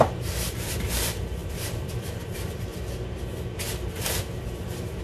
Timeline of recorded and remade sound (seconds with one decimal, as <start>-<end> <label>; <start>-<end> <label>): 0.0-2.7 remade; 2.7-5.0 recorded